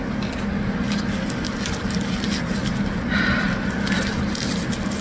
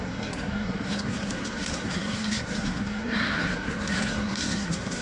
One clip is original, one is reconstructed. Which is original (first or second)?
first